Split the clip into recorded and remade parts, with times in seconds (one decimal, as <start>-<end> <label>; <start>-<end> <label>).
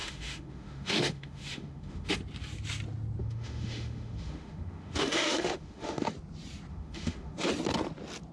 0.0-2.1 remade; 2.1-3.2 recorded; 3.2-6.1 remade; 6.1-6.7 recorded; 6.7-7.5 remade; 7.5-8.3 recorded